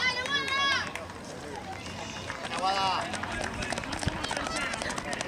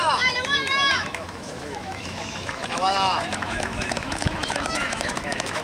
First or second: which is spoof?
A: second